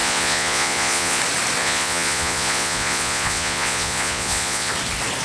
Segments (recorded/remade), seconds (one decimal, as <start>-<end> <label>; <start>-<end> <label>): 0.0-1.2 remade; 1.2-1.6 recorded; 1.6-4.7 remade; 4.7-5.2 recorded